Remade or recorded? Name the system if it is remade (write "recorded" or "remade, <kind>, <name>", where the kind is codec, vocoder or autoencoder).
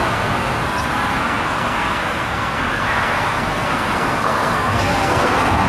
remade, codec, SNAC